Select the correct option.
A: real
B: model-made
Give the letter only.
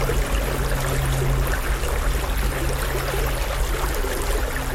A